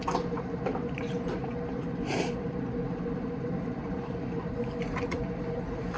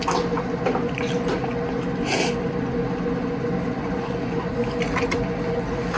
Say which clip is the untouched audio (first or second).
second